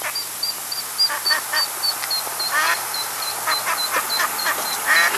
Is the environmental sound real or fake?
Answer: real